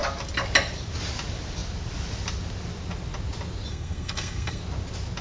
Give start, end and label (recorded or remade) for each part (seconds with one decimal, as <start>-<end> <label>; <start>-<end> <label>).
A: 0.0-3.7 recorded; 3.7-4.6 remade; 4.6-5.2 recorded